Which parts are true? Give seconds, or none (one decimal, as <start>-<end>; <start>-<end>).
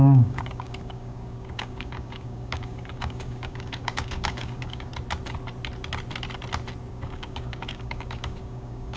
4.9-6.9